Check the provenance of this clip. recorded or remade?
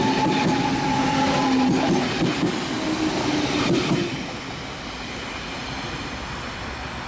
recorded